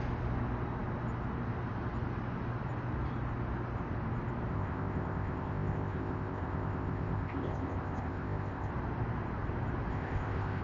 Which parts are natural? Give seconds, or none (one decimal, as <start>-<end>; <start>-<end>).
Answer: 0.0-4.5; 8.7-9.9